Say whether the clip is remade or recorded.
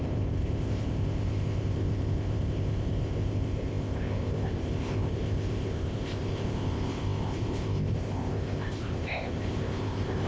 remade